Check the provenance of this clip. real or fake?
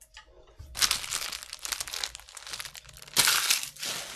real